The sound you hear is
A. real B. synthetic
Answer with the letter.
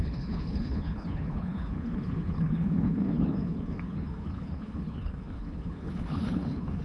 B